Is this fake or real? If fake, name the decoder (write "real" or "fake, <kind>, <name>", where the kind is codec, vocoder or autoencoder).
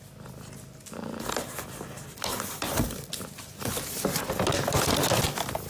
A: real